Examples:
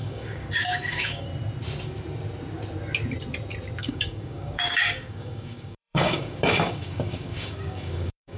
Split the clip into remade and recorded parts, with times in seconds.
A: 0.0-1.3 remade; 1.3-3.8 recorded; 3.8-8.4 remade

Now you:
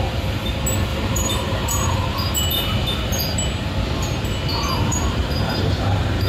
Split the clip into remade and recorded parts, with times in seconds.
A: 0.0-0.9 recorded; 0.9-3.2 remade; 3.2-4.5 recorded; 4.5-6.3 remade

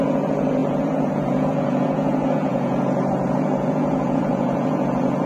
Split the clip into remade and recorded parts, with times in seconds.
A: 0.0-5.3 remade